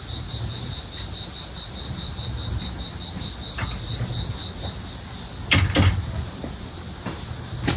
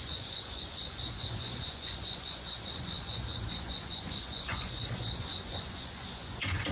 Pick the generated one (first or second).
second